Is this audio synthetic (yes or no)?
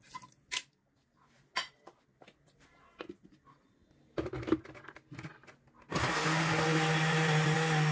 no